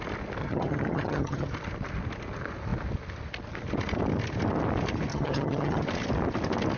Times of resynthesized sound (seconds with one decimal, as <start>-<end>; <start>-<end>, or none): 0.4-1.5; 5.1-5.8